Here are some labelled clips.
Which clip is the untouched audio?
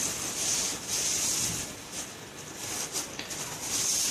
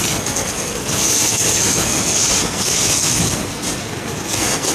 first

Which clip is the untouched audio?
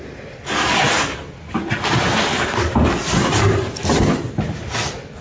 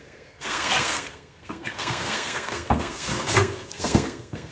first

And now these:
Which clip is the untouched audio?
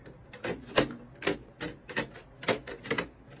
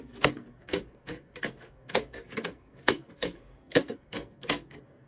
first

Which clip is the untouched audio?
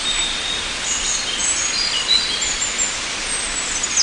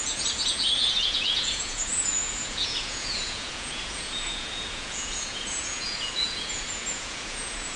first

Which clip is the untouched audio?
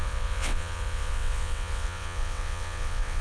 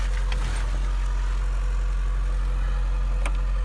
second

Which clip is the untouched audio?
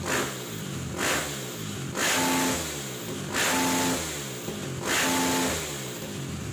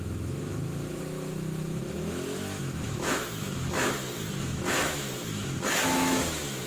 first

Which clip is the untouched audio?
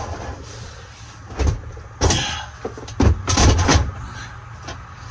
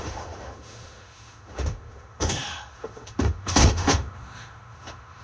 first